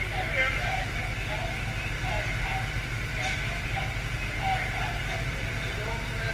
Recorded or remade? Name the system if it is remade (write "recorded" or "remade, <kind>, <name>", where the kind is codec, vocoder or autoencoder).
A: recorded